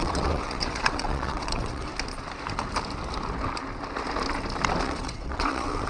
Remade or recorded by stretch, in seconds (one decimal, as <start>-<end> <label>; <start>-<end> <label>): 0.0-1.9 remade; 1.9-4.8 recorded; 4.8-5.9 remade